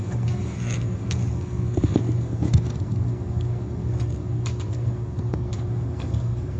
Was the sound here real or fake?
fake